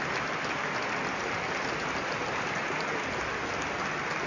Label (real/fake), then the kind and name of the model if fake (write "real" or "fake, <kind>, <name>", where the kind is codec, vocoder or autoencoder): real